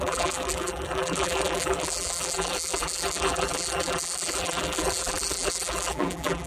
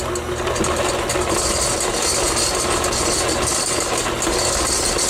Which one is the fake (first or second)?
first